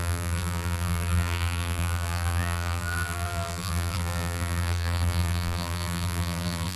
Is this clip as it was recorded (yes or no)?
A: no